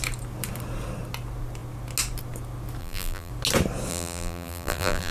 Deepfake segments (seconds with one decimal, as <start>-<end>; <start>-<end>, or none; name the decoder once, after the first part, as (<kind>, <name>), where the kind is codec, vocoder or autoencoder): 2.8-3.3 (vocoder, BigVGAN v2); 3.9-5.1